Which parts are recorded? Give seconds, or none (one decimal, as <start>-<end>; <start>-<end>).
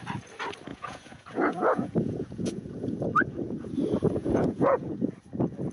0.0-0.7; 3.7-4.2; 5.1-5.7